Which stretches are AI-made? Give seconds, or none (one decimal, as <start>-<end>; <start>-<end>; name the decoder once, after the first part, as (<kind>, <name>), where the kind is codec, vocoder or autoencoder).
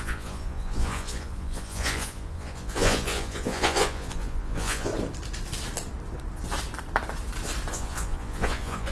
0.0-4.9 (vocoder, Vocos); 7.7-8.9